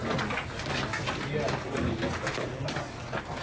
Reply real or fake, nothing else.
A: real